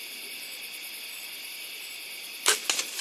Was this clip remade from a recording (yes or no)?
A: no